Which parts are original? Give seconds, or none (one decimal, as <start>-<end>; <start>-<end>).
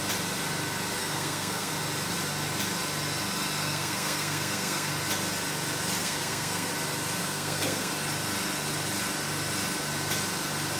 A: 0.0-1.0; 1.7-3.6; 4.9-6.0; 6.7-7.2; 7.9-10.8